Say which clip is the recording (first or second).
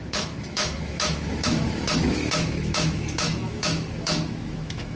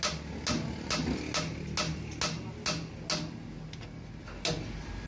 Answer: second